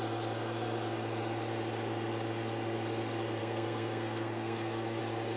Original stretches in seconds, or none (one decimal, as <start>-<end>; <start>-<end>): 0.0-3.4; 5.0-5.4